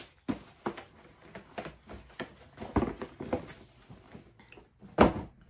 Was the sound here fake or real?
real